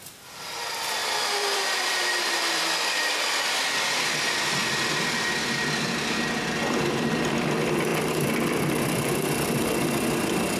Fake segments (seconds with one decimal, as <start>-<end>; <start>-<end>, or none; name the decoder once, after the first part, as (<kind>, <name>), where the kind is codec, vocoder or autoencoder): 0.0-10.6 (vocoder, BigVGAN v2)